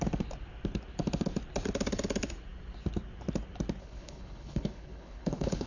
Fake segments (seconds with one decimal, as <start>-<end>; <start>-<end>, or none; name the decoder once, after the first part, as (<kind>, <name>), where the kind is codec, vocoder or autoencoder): 3.8-5.7 (codec, HILCodec)